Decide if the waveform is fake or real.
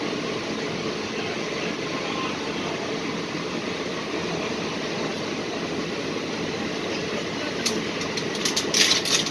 real